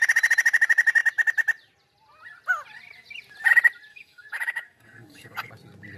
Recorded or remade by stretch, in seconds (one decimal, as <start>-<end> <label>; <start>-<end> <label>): 0.0-3.9 recorded; 3.9-5.5 remade; 5.5-6.0 recorded